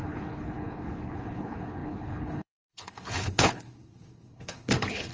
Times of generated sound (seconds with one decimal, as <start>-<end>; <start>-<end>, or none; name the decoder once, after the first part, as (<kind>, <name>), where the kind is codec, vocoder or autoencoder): 0.0-5.1 (codec, HILCodec)